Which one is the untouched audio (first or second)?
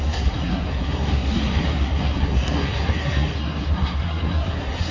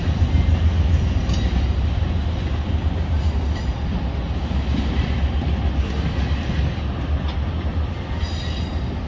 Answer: second